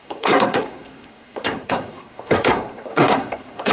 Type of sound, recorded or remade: remade